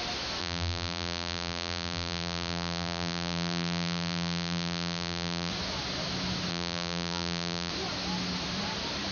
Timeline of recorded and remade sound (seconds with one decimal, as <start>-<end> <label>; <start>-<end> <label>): 0.0-0.4 recorded; 0.4-5.5 remade; 5.5-6.5 recorded; 6.5-7.7 remade; 7.7-9.1 recorded